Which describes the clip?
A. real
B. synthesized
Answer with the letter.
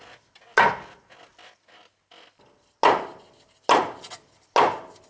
A